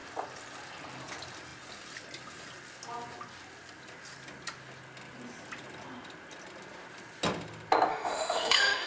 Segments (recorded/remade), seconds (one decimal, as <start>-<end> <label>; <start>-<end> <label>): 0.0-7.9 recorded; 7.9-8.9 remade